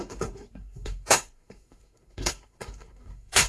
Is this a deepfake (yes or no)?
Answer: yes